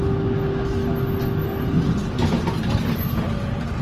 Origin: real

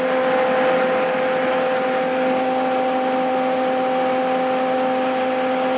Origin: real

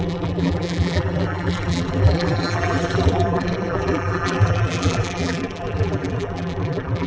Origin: fake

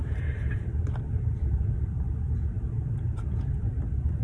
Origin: fake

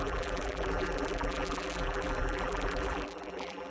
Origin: fake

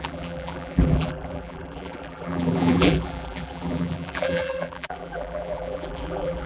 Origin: fake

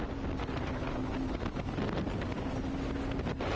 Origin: real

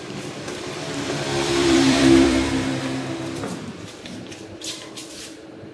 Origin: fake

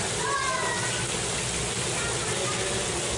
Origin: real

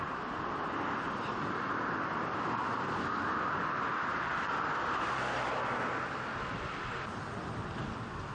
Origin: real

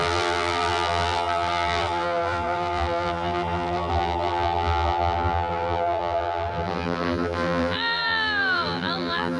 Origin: fake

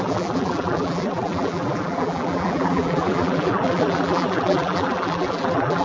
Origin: fake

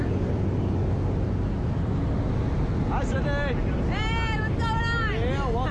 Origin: real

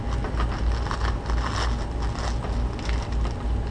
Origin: real